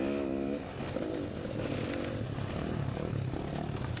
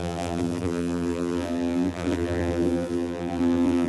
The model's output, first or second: second